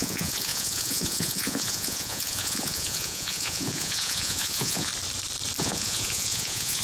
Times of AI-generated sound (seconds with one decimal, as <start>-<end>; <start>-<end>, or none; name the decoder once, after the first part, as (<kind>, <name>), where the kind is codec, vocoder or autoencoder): 0.0-4.9 (vocoder, Vocos); 5.6-6.8